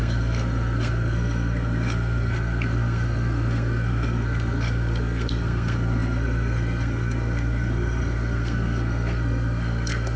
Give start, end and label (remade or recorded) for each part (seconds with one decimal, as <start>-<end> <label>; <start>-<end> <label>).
0.0-10.2 remade